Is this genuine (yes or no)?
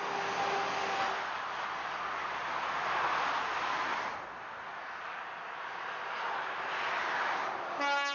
yes